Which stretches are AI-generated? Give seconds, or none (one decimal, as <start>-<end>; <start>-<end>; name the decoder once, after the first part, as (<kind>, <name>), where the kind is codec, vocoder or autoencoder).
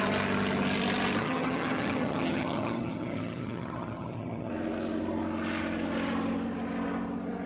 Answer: 1.2-4.5 (vocoder, HiFi-GAN)